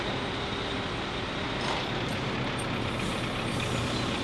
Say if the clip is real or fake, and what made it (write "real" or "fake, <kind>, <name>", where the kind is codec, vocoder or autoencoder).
real